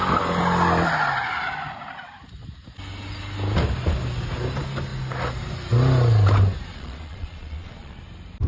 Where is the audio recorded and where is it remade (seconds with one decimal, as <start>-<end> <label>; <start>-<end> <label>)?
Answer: 0.0-6.7 recorded; 6.7-8.0 remade; 8.0-8.5 recorded